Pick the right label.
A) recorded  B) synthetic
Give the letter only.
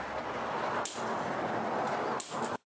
A